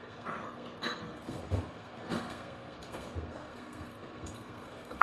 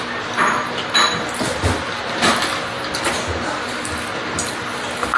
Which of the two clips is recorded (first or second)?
second